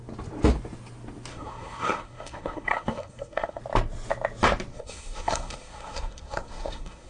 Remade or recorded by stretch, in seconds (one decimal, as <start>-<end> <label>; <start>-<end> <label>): 0.0-1.3 recorded; 1.3-3.6 remade; 3.6-4.7 recorded; 4.7-7.1 remade